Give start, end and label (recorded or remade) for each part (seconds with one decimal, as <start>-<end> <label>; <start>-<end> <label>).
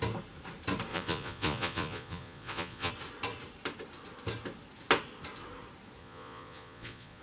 0.0-0.9 recorded; 0.9-2.9 remade; 2.9-6.0 recorded; 6.0-7.2 remade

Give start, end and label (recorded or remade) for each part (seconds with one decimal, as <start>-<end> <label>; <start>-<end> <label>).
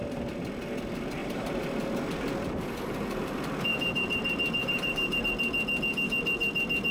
0.0-1.2 recorded; 1.2-2.1 remade; 2.1-3.7 recorded; 3.7-5.2 remade; 5.2-6.9 recorded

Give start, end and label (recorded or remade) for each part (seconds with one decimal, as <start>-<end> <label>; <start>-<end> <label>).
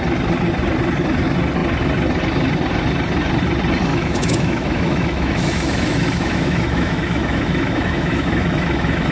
0.0-3.9 recorded; 3.9-9.1 remade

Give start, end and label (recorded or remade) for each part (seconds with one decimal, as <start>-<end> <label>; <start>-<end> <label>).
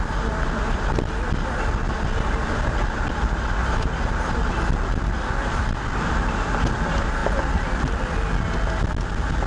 0.0-9.5 recorded